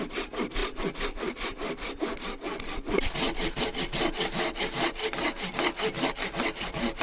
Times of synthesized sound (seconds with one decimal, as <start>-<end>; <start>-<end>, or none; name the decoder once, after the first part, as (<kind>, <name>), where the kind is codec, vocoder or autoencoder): 0.6-3.6 (vocoder, BigVGAN v2)

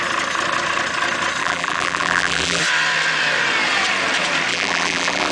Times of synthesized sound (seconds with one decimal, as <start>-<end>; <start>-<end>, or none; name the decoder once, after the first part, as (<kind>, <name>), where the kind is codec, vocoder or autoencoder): 1.4-2.6 (vocoder, BigVGAN v2); 4.5-5.3

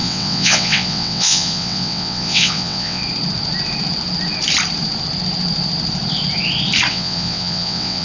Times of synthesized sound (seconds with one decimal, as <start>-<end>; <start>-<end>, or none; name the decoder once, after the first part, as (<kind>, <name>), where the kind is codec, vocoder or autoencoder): 0.0-3.0 (vocoder, WaveNeXt); 6.9-8.0

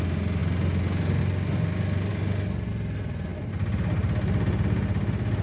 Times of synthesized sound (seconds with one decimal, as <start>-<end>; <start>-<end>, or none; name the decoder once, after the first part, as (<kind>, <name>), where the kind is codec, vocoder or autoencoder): none

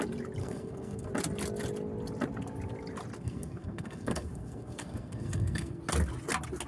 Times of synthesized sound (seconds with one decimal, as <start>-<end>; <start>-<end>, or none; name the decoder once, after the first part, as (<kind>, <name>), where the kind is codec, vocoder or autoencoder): 0.4-1.1 (codec, SNAC); 3.2-5.8

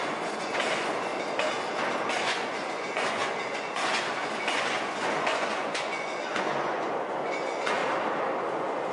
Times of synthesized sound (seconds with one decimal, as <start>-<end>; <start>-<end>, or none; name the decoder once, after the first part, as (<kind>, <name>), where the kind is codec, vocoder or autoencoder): 0.0-1.1 (vocoder, Vocos); 2.1-7.8; 8.4-8.9

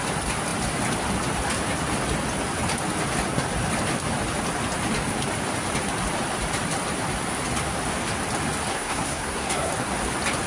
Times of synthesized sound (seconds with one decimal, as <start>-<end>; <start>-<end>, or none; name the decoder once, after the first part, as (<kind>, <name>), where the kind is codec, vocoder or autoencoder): 8.7-9.7 (codec, SNAC)